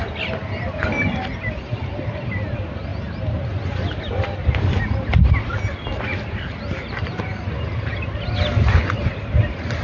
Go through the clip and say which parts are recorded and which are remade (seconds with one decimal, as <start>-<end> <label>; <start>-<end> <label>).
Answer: 0.0-9.8 recorded